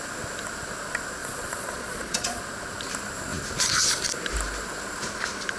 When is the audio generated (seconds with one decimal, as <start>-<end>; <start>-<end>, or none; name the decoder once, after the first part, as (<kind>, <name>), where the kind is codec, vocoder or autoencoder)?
1.2-2.4 (vocoder, Vocos)

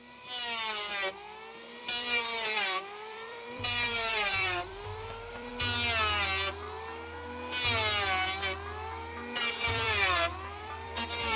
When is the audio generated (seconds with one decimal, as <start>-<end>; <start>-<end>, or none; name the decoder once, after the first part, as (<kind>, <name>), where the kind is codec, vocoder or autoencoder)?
0.0-0.9 (vocoder, BigVGAN v2); 1.8-5.5; 9.4-11.4

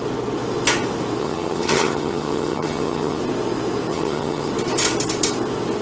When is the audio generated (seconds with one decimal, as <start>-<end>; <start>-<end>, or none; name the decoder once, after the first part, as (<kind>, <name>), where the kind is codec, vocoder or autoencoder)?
1.2-3.2 (vocoder, HiFi-GAN); 3.9-4.5

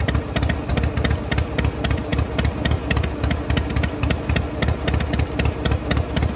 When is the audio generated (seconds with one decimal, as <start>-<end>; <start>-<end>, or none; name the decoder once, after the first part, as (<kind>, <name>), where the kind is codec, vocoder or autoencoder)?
none